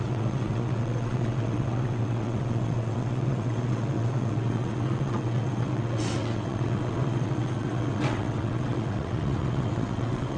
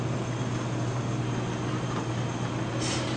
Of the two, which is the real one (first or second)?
second